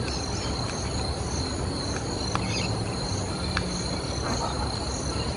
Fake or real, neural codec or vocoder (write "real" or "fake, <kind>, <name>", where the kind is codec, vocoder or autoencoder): real